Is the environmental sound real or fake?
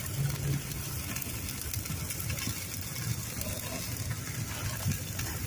real